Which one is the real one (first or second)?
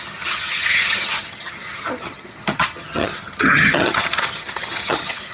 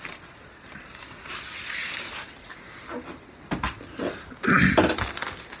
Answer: second